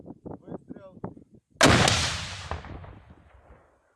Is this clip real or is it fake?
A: real